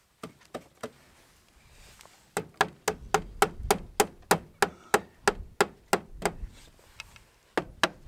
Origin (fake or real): real